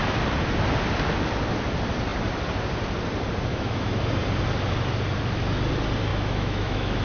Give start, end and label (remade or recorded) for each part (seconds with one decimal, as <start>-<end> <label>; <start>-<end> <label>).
0.0-3.5 recorded; 3.5-4.0 remade; 4.0-6.1 recorded; 6.1-7.0 remade